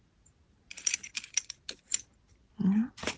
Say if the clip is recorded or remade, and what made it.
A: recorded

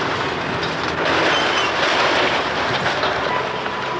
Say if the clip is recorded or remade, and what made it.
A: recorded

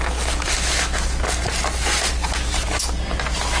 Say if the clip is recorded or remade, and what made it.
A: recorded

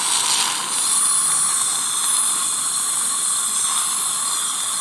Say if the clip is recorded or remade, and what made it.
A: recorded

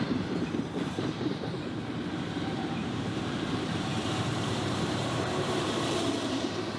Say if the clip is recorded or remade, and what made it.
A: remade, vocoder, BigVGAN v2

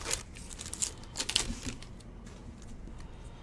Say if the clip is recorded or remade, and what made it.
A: recorded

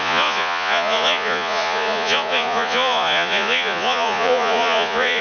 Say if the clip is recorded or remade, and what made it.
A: remade, vocoder, Vocos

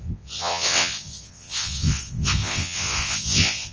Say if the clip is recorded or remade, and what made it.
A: remade, vocoder, WaveNeXt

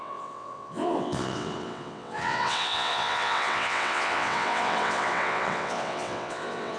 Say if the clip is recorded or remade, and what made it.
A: remade, vocoder, WaveNeXt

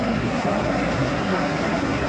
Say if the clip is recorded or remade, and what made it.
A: remade, codec, SNAC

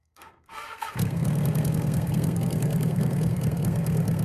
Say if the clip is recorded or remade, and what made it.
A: remade, codec, SNAC